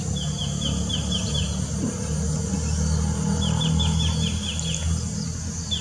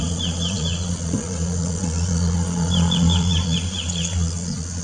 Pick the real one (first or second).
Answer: first